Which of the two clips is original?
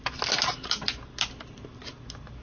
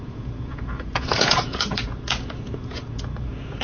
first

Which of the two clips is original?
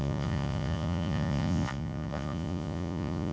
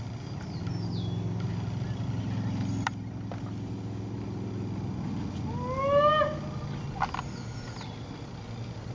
second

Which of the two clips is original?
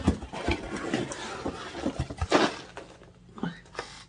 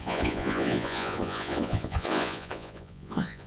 first